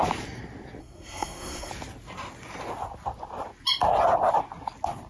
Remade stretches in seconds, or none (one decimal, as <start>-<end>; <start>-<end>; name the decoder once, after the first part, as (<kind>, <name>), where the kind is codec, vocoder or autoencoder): 0.8-1.7 (codec, SNAC)